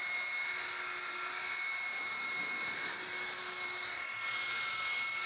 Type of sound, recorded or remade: recorded